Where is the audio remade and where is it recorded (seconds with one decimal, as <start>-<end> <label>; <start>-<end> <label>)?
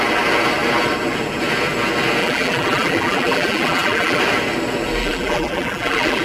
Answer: 0.0-2.2 recorded; 2.2-4.2 remade; 4.2-5.0 recorded; 5.0-6.2 remade